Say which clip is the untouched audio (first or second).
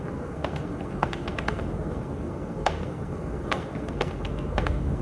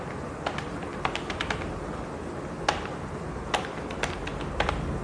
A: second